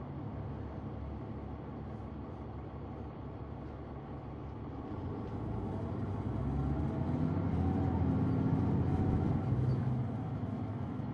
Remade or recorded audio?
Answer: recorded